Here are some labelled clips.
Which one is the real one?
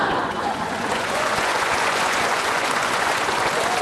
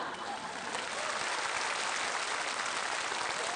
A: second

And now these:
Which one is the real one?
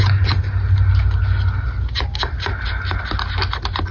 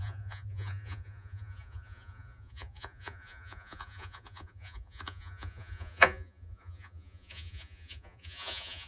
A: first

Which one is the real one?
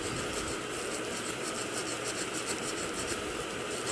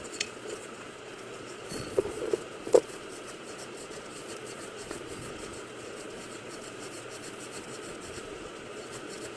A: first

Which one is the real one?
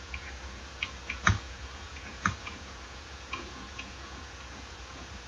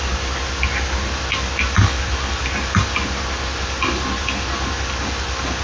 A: second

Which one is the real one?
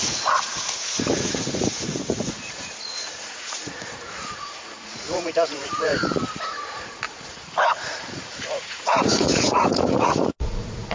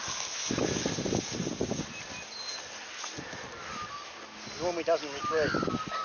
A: second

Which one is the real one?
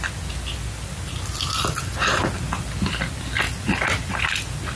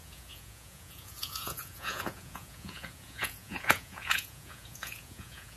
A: first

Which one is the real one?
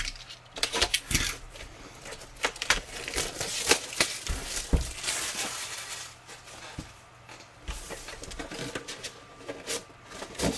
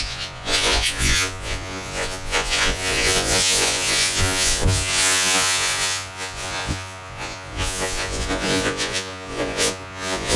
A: first